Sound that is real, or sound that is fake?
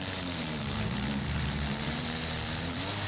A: fake